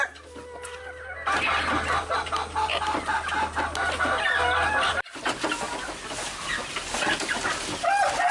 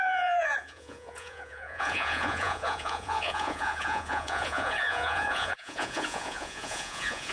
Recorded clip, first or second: first